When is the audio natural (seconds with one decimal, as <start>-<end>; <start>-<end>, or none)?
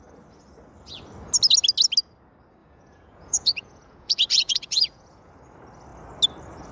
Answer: 0.0-2.6; 5.3-6.7